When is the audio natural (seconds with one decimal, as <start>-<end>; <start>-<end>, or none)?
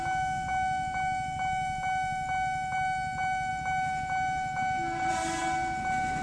0.0-6.2